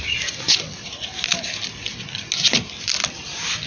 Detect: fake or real real